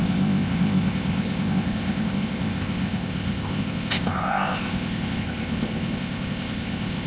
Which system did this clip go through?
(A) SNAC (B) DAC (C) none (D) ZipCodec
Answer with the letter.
D